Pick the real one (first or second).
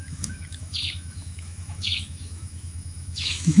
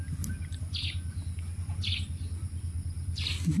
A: second